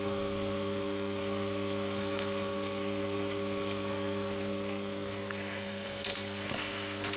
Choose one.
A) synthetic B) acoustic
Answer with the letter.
A